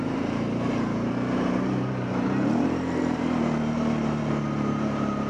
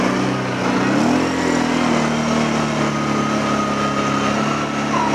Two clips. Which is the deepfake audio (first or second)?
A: first